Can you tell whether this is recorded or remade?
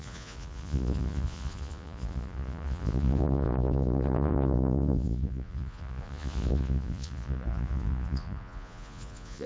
remade